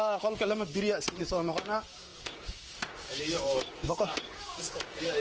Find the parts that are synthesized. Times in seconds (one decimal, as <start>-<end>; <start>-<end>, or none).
0.0-0.7; 1.2-5.2